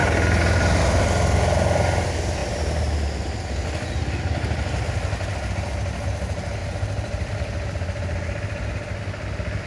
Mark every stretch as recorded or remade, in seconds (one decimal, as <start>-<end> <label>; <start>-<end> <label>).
0.0-6.6 recorded; 6.6-7.3 remade; 7.3-9.7 recorded